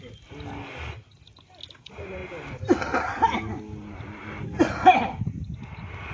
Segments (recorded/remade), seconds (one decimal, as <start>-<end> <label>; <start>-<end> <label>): 0.0-6.1 recorded